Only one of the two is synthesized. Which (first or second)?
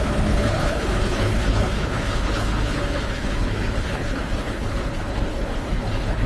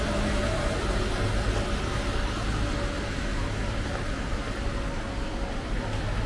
first